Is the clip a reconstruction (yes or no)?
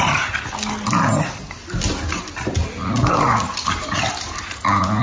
no